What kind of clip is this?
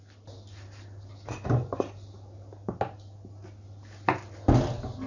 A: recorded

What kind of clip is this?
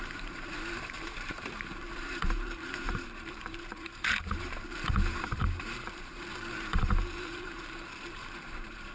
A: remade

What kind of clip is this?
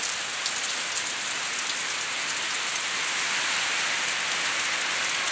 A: recorded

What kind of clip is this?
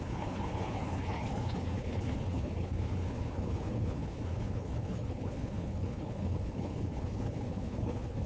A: remade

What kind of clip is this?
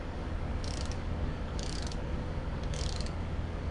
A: remade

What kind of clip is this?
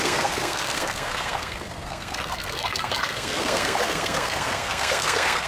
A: remade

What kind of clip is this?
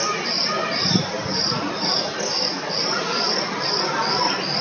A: remade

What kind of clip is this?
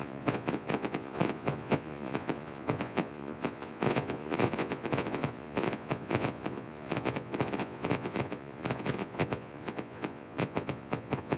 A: remade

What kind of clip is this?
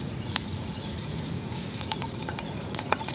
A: remade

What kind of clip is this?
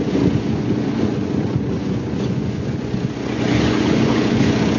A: remade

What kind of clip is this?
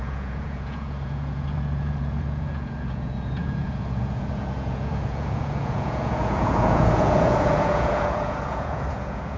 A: remade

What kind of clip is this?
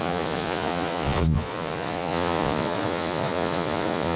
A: remade